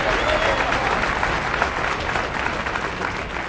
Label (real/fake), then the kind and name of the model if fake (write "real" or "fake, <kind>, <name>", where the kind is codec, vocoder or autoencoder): real